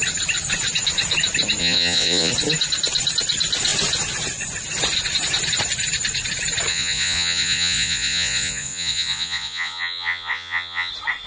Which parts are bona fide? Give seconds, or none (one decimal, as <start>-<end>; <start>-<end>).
0.0-1.6; 2.3-6.7; 10.9-11.3